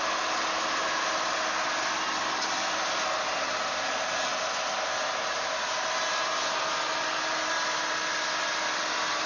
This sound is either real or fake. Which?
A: real